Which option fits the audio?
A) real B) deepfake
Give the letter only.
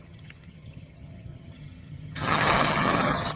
B